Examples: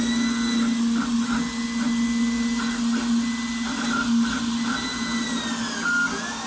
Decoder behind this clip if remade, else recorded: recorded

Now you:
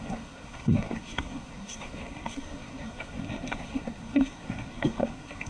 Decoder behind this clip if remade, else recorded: remade, codec, SNAC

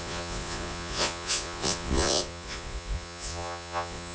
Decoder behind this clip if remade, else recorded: remade, vocoder, Vocos